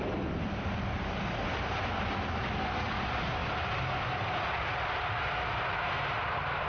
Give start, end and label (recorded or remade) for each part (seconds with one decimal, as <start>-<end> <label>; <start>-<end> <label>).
0.0-6.7 recorded